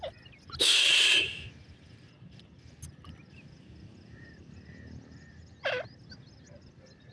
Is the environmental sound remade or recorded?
recorded